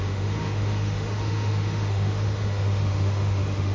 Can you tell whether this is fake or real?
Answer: fake